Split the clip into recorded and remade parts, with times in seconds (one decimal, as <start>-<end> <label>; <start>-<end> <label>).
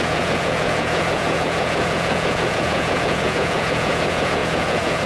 0.0-5.1 remade